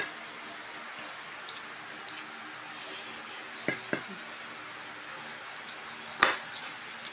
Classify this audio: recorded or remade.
recorded